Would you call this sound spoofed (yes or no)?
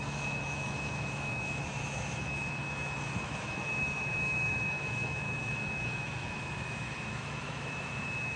yes